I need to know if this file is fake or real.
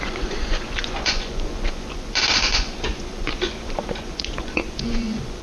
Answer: fake